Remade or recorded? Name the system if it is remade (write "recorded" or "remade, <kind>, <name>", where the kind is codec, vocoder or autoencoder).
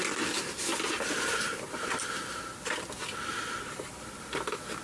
recorded